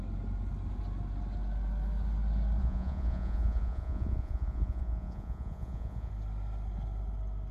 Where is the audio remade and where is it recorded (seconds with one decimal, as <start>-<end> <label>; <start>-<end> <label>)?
0.0-2.6 recorded; 2.6-6.1 remade; 6.1-7.5 recorded